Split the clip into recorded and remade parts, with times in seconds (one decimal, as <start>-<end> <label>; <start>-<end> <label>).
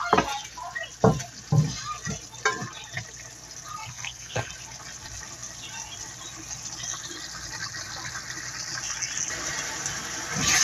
0.0-3.8 recorded; 3.8-4.5 remade; 4.5-10.6 recorded